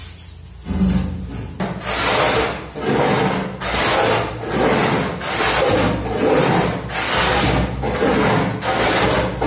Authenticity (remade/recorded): recorded